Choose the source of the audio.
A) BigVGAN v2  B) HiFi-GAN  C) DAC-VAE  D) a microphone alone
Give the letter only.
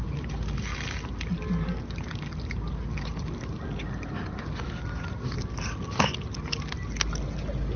D